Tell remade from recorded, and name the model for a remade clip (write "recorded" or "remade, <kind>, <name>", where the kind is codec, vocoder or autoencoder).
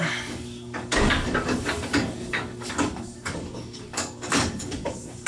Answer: remade, codec, DAC